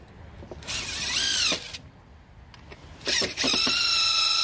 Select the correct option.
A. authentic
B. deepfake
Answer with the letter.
A